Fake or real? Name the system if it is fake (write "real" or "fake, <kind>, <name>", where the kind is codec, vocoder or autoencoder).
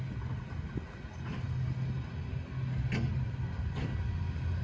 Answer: real